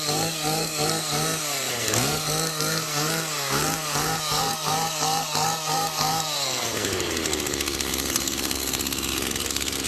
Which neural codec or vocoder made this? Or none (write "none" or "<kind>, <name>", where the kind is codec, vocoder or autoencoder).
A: codec, SNAC